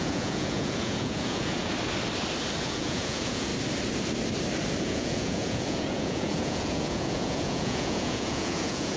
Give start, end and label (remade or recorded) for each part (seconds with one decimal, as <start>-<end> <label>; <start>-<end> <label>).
0.0-1.7 remade; 1.7-2.6 recorded; 2.6-3.5 remade; 3.5-4.8 recorded; 4.8-9.0 remade